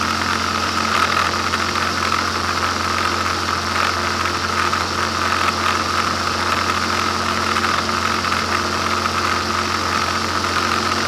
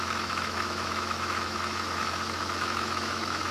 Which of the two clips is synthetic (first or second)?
second